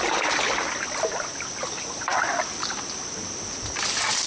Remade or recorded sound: recorded